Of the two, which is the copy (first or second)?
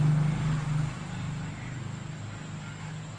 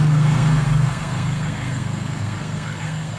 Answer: second